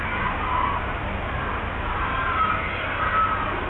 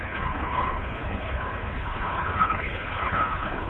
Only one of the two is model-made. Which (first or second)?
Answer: second